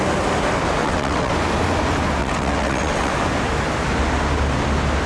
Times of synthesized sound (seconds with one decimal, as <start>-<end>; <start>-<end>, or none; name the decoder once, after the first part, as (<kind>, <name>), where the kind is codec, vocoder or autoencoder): 0.8-1.3 (vocoder, WaveNeXt); 2.2-3.1